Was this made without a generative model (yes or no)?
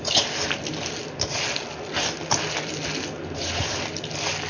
yes